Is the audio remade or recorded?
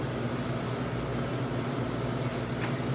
recorded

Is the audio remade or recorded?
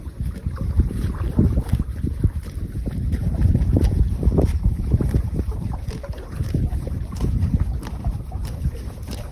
remade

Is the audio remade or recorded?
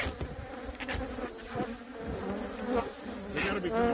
recorded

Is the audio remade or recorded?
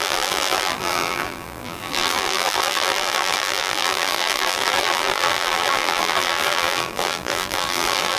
remade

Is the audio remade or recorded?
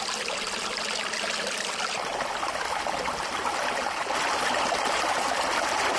recorded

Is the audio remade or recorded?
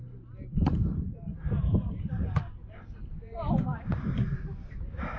remade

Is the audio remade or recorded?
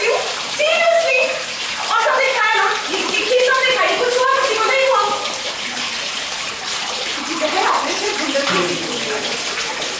remade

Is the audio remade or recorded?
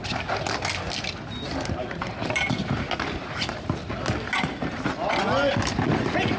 recorded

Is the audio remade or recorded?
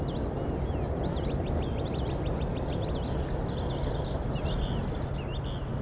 recorded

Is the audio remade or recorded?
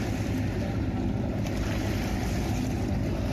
recorded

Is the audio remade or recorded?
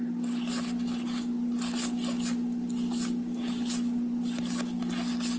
recorded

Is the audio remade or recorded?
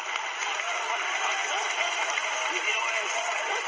recorded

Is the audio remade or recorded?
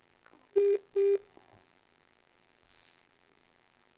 remade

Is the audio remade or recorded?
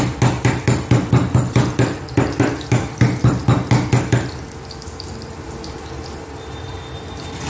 recorded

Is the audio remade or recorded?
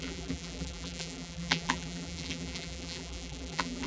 remade